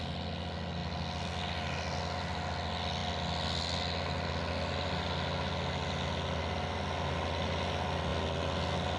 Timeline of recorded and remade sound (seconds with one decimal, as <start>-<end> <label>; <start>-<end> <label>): 0.0-9.0 recorded